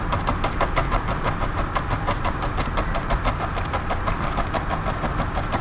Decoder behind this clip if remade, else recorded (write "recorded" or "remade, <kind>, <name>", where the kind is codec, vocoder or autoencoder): recorded